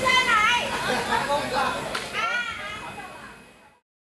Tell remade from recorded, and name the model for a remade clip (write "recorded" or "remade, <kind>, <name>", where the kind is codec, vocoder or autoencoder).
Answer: recorded